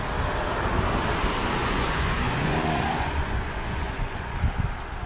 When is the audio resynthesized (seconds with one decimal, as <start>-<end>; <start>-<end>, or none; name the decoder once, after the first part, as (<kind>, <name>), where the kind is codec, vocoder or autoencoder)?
1.6-4.4 (vocoder, Vocos)